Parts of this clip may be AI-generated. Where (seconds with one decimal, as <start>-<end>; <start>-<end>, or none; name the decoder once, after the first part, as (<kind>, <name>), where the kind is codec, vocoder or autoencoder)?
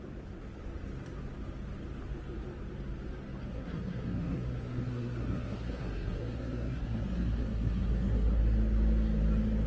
3.5-8.4 (codec, SNAC)